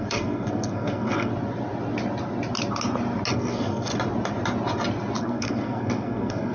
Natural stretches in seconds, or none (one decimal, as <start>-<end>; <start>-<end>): 1.3-3.3; 3.9-5.2